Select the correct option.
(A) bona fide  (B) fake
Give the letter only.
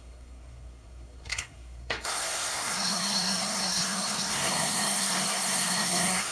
B